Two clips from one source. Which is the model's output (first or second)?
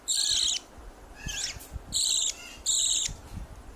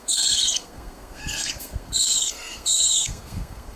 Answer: second